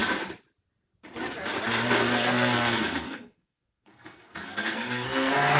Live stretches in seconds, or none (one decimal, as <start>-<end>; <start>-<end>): 0.0-2.0